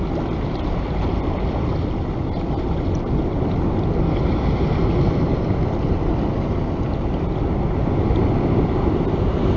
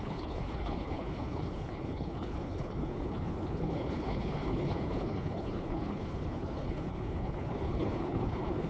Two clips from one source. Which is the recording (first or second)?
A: first